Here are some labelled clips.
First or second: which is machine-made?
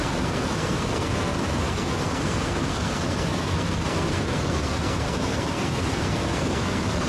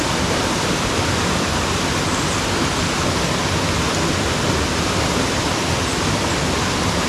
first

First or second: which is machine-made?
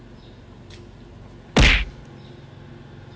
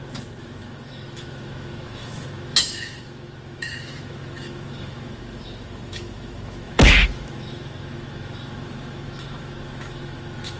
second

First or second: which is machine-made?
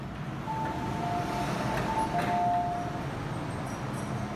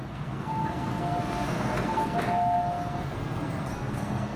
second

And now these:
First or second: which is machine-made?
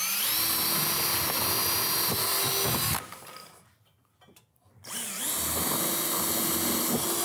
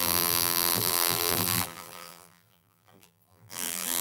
second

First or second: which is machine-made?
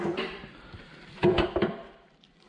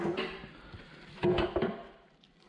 first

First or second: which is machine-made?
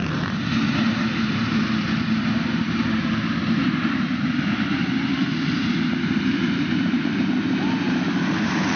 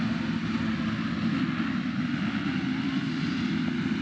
first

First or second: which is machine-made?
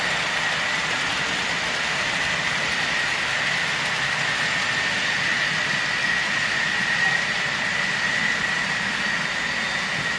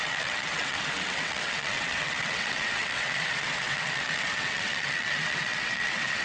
second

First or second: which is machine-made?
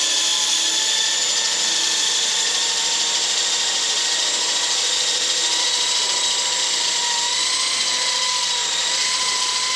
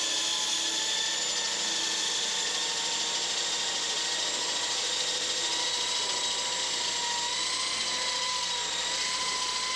first